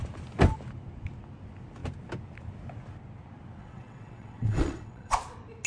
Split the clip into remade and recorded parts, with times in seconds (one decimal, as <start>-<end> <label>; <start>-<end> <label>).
0.0-3.6 recorded; 3.6-5.1 remade; 5.1-5.7 recorded